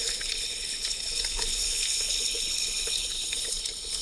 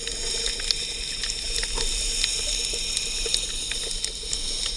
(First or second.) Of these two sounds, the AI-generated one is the first